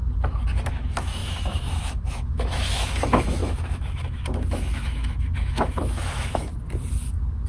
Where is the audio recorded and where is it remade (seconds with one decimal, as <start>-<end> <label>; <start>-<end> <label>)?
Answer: 0.0-0.7 recorded; 0.7-6.5 remade; 6.5-7.5 recorded